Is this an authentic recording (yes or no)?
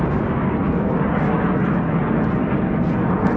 yes